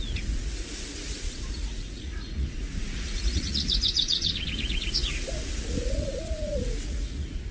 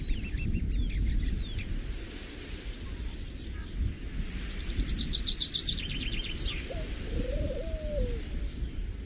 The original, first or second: second